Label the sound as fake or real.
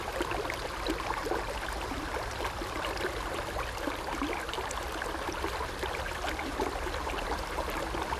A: real